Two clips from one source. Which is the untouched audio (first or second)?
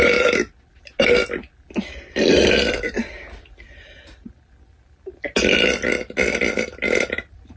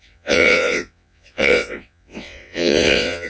first